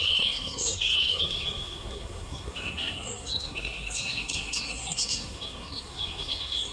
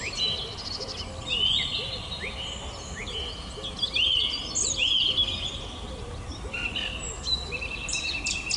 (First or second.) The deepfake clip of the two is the first